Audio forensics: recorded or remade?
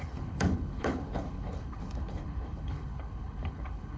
remade